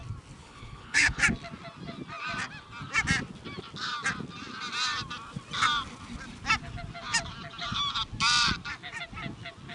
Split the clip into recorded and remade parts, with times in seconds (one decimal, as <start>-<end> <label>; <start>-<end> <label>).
0.0-0.4 recorded; 0.4-1.2 remade; 1.2-9.7 recorded